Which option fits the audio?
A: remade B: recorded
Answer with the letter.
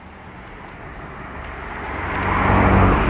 B